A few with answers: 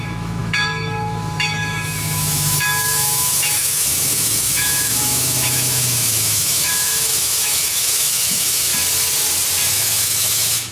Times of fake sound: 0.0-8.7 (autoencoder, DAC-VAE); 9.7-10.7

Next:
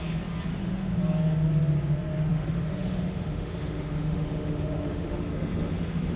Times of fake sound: 0.5-1.0 (autoencoder, DAC-VAE); 2.3-6.2